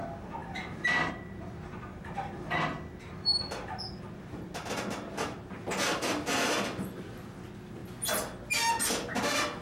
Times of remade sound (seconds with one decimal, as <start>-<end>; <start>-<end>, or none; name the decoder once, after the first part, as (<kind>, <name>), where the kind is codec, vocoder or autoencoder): 0.4-1.1 (vocoder, BigVGAN v2)